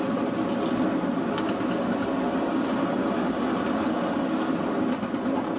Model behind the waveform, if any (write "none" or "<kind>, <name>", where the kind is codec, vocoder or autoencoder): none